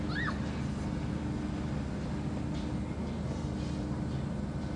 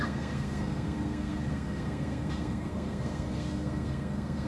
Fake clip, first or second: second